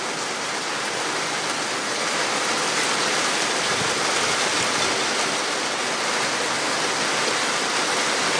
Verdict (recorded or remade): recorded